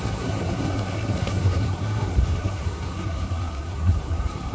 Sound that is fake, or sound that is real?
fake